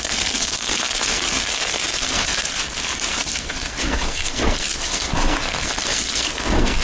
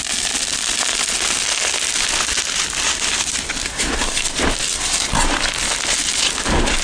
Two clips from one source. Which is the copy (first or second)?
first